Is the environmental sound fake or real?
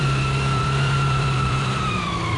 fake